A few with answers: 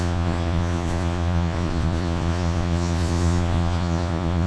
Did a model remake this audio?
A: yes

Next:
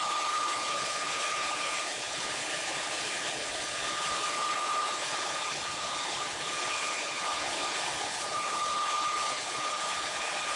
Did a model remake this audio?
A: yes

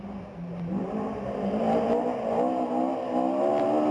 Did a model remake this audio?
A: no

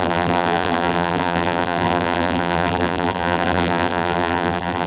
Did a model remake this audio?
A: yes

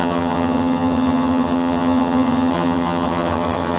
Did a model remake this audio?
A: yes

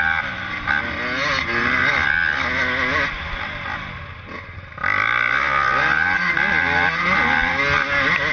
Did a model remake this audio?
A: no